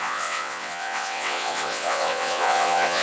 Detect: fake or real fake